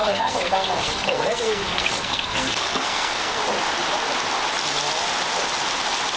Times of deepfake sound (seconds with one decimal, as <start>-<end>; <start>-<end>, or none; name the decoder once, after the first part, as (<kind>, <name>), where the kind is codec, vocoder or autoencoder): 0.0-3.4 (codec, SNAC)